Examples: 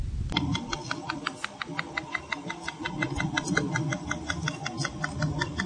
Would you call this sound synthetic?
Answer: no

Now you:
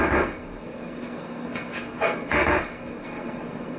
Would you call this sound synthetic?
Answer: yes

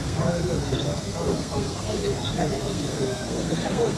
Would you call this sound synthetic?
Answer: yes